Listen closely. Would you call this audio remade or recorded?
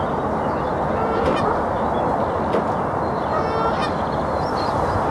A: recorded